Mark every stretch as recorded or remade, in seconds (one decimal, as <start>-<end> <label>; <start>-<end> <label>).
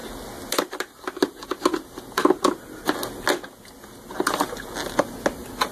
0.0-5.7 recorded